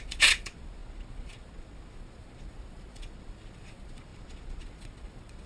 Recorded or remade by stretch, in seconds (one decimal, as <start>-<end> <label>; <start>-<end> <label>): 0.0-5.5 remade